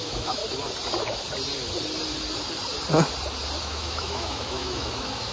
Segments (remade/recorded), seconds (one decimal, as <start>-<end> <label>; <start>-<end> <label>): 0.0-0.4 remade; 0.4-3.6 recorded; 3.6-5.3 remade